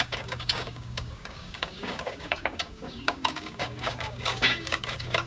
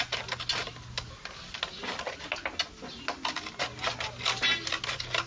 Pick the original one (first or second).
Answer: second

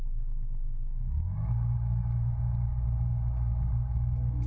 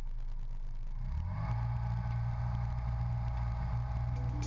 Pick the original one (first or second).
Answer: second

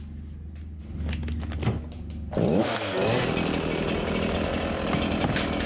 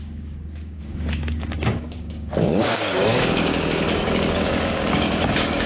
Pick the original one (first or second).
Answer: first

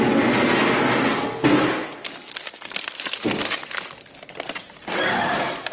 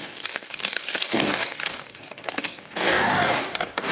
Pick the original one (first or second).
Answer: first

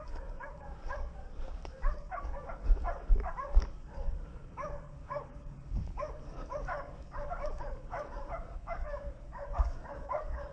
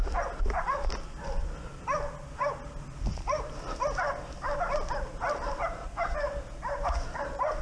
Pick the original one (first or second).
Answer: second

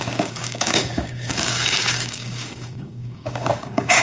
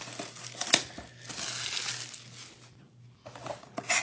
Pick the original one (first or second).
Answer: second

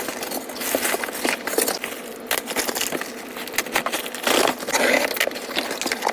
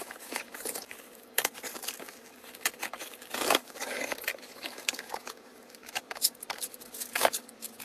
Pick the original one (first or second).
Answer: first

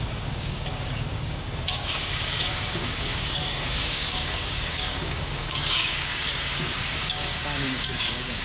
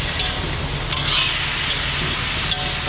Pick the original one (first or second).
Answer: second